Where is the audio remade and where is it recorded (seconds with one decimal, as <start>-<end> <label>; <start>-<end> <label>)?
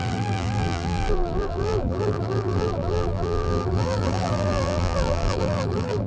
0.0-6.1 remade